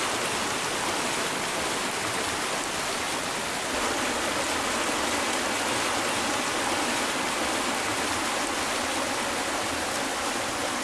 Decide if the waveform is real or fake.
real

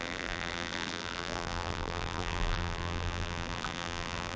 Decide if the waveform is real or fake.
fake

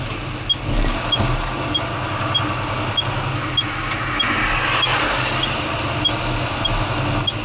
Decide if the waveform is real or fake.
real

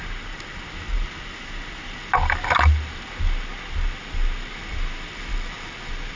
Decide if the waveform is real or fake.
real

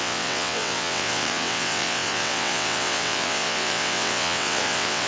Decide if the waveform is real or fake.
fake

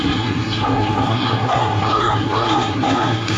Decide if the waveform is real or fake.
fake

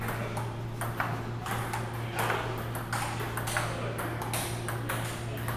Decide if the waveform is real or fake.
real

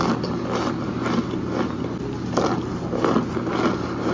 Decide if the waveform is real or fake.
real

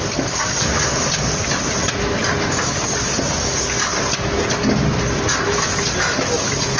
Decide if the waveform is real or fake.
real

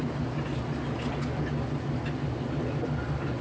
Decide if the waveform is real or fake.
real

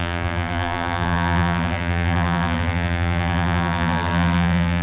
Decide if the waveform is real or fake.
fake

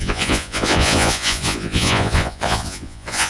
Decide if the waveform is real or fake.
fake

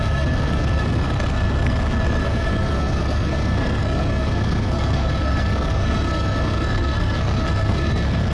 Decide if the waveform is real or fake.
fake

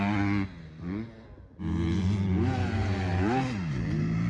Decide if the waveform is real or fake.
real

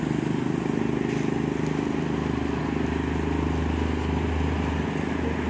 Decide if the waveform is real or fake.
real